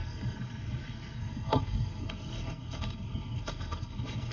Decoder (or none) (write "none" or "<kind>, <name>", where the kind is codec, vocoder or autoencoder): codec, SNAC